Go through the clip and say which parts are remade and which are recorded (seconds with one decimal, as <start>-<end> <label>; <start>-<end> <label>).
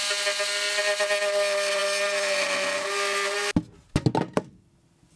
0.0-5.2 recorded